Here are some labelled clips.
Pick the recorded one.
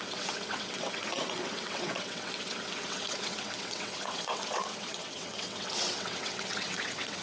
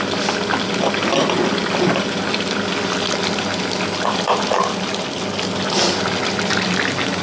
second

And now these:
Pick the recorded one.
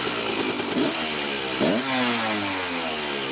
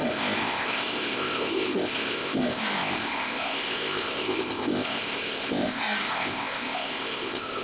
first